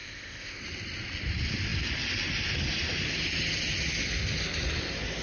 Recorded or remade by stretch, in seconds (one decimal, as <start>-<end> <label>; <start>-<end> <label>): 0.0-0.6 remade; 0.6-5.2 recorded